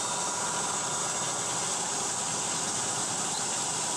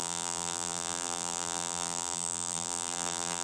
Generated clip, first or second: second